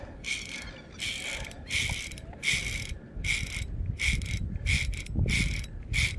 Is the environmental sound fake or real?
real